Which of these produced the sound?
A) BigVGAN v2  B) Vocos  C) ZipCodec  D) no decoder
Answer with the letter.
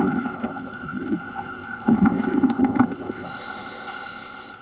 C